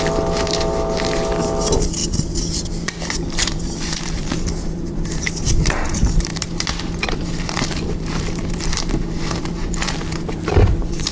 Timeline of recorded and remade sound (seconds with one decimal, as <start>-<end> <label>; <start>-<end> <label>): 0.0-11.1 remade